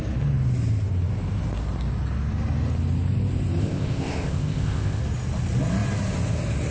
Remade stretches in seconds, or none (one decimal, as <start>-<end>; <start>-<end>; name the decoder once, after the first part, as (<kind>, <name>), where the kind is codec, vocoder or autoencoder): 3.6-5.0 (codec, ZipCodec)